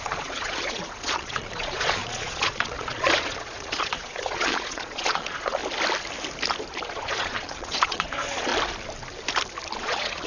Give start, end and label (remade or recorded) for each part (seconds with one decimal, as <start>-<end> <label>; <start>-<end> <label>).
0.0-5.6 remade; 5.6-6.9 recorded; 6.9-8.5 remade; 8.5-9.8 recorded; 9.8-10.3 remade